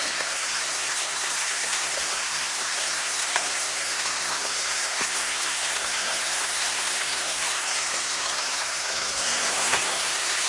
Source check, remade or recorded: remade